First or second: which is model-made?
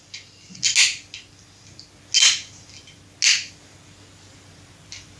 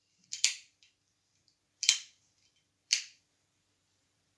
second